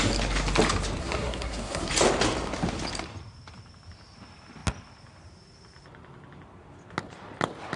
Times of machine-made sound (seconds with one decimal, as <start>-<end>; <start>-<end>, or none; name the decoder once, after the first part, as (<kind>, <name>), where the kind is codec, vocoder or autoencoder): 1.0-1.9 (codec, SNAC)